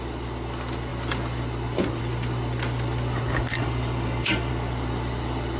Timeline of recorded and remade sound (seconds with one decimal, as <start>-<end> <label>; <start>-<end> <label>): 0.0-3.5 recorded; 3.5-4.5 remade; 4.5-5.6 recorded